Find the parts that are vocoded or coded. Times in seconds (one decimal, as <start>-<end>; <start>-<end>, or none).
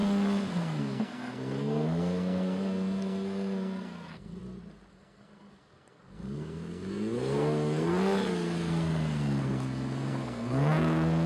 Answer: 0.0-4.4; 4.9-11.3